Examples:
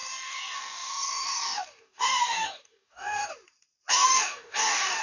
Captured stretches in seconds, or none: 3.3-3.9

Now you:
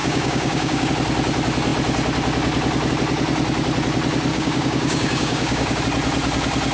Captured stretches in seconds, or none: 0.9-4.3; 5.8-6.7